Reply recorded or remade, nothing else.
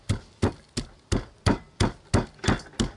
recorded